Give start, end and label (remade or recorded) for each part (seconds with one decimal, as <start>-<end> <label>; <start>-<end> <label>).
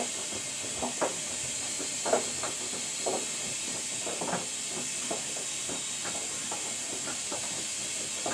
0.0-1.1 recorded; 1.1-2.1 remade; 2.1-6.2 recorded; 6.2-7.6 remade; 7.6-8.3 recorded